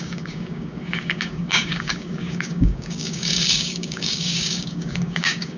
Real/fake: fake